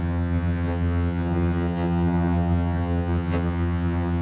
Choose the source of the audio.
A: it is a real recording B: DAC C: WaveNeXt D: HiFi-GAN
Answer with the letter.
D